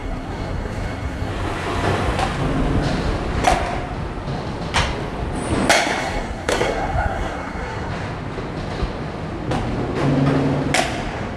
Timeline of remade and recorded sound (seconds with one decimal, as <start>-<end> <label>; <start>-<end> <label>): 0.0-1.3 remade; 1.3-6.0 recorded; 6.0-7.9 remade; 7.9-11.4 recorded